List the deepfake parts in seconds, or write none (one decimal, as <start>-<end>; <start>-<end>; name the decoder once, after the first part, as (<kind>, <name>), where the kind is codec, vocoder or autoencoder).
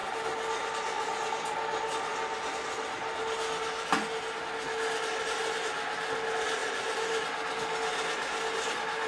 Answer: none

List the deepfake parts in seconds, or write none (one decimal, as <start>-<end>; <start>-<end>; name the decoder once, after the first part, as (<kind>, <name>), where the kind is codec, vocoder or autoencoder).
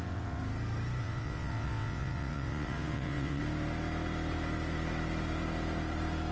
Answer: 0.0-0.4 (vocoder, WaveNeXt); 1.0-3.4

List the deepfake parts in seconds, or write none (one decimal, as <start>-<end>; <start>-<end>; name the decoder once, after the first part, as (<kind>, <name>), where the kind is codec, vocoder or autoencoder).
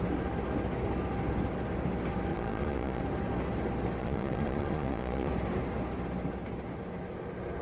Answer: 2.3-3.0 (vocoder, Vocos); 4.0-5.3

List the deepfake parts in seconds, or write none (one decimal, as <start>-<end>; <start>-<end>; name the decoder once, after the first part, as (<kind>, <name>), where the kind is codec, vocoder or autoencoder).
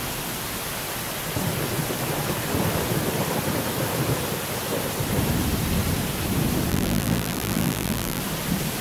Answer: 6.7-8.2 (vocoder, BigVGAN v2)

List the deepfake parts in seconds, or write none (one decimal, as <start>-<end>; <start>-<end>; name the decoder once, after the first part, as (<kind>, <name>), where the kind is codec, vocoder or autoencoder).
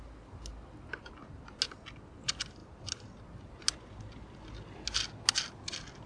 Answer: none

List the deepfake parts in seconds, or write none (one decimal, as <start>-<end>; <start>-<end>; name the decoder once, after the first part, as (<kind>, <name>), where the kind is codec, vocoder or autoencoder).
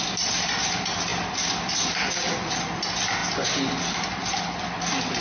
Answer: none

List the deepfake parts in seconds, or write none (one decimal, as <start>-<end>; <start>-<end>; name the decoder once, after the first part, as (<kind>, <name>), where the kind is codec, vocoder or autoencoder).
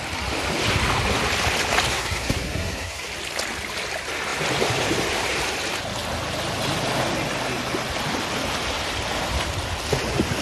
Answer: 1.9-3.1 (codec, SNAC)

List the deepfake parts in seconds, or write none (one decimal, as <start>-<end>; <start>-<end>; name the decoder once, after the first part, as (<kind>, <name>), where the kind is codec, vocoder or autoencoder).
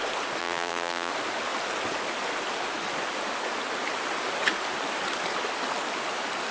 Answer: 0.4-1.1 (vocoder, BigVGAN v2)